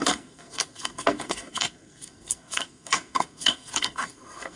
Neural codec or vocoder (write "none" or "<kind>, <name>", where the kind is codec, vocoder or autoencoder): codec, SNAC